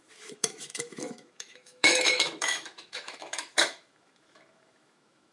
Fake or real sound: fake